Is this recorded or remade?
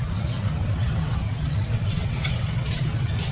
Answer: remade